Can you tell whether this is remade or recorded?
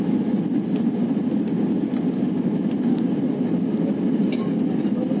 recorded